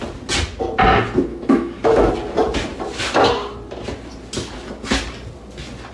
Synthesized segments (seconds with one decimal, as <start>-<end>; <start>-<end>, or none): 1.3-2.1